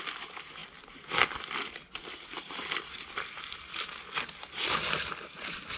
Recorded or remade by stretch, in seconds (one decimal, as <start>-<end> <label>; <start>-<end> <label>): 0.0-0.6 recorded; 0.6-3.4 remade; 3.4-5.8 recorded